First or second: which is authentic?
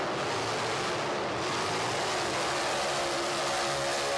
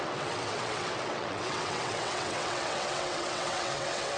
first